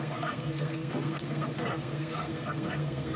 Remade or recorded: remade